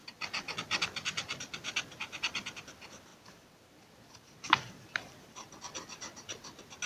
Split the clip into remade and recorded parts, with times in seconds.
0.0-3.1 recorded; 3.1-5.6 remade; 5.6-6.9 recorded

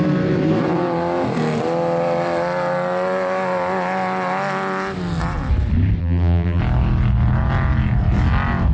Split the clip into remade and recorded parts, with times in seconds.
0.0-6.0 recorded; 6.0-6.6 remade; 6.6-8.7 recorded

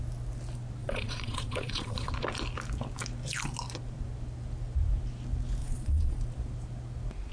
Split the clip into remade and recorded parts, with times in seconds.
0.0-0.8 recorded; 0.8-2.1 remade; 2.1-5.6 recorded; 5.6-6.2 remade; 6.2-7.3 recorded

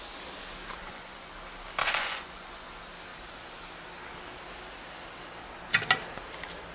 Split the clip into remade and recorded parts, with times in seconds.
0.0-0.8 recorded; 0.8-1.3 remade; 1.3-1.8 recorded; 1.8-2.7 remade; 2.7-6.7 recorded